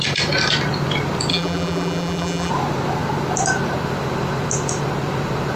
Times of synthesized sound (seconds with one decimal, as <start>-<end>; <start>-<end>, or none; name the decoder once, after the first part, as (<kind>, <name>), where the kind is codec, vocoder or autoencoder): 1.3-2.5 (vocoder, BigVGAN v2)